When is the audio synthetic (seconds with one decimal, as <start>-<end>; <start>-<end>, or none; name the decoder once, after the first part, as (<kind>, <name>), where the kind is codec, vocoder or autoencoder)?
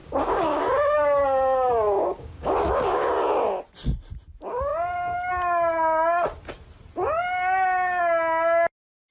0.0-0.6 (codec, DAC); 2.0-3.1